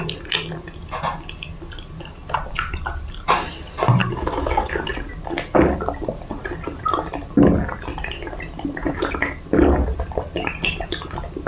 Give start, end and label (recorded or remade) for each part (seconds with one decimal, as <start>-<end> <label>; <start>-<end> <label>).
0.0-4.0 recorded; 4.0-4.9 remade; 4.9-11.5 recorded